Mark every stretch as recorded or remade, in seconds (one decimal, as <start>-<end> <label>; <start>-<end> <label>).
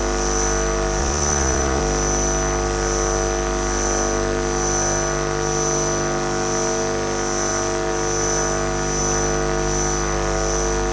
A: 0.0-1.0 recorded; 1.0-1.8 remade; 1.8-10.9 recorded